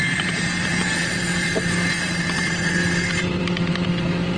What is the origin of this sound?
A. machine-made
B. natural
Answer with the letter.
A